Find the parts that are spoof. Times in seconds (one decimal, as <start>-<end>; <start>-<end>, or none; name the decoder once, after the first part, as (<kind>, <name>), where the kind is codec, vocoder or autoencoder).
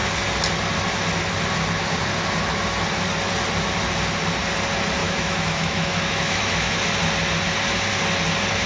5.0-6.8 (autoencoder, DAC-VAE)